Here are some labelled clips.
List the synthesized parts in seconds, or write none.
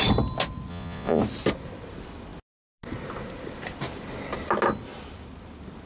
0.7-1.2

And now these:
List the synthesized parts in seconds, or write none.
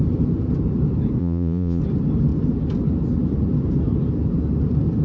1.2-1.8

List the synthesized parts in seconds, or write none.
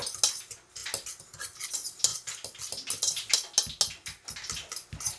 none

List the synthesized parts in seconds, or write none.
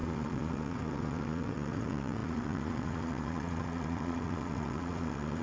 0.0-5.4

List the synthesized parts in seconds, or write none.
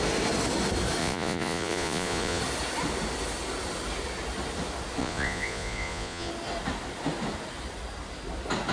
1.0-2.4; 5.0-6.3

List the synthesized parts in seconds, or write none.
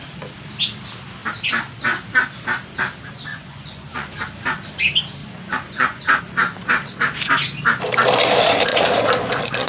3.3-4.1; 5.2-6.2; 8.7-9.7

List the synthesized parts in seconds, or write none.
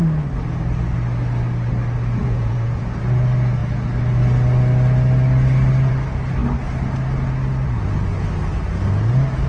2.2-2.8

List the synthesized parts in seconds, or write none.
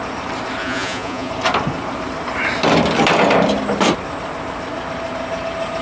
0.6-1.3